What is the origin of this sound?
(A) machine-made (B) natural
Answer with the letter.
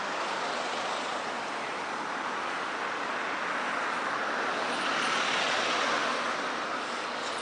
B